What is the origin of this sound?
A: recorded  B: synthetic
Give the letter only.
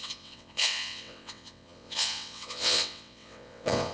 B